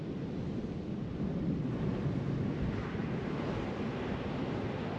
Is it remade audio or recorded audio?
recorded